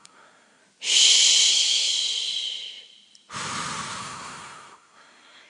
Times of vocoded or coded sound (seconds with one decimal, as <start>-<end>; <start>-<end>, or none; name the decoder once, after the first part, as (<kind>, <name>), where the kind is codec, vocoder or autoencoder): 0.0-0.6 (codec, SNAC); 1.5-1.9; 4.0-5.5